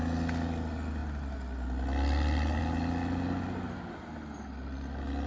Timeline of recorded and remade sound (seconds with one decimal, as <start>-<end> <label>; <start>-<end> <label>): 0.0-5.3 recorded